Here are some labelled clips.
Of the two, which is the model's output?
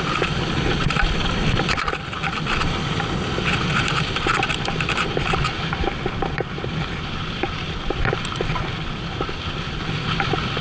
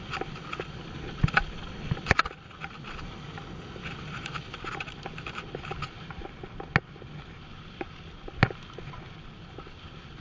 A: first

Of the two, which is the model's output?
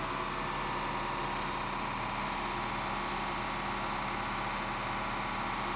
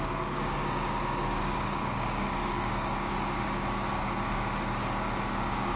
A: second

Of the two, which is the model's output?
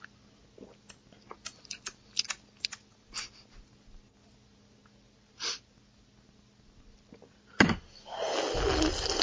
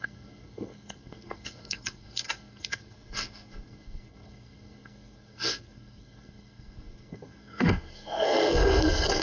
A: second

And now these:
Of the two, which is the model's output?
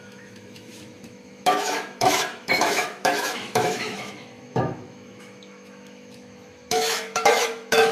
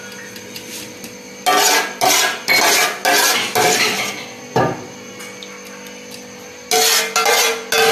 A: first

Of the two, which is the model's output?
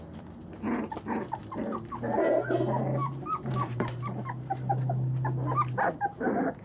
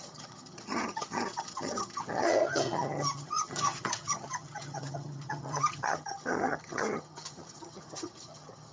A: second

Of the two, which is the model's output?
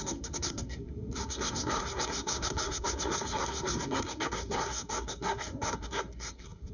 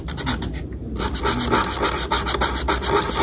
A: first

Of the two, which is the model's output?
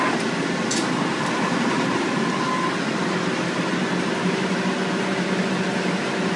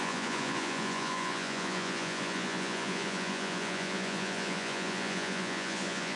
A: second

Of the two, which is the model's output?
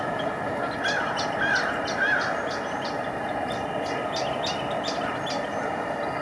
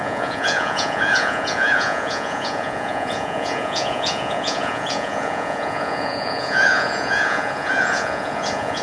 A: second